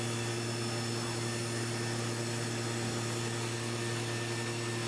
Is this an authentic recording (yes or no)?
yes